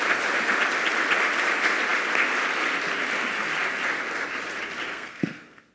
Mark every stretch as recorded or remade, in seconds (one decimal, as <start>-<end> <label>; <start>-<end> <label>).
0.0-4.9 recorded; 4.9-5.7 remade